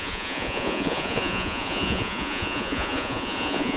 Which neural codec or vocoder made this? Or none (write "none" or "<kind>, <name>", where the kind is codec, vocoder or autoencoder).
vocoder, Vocos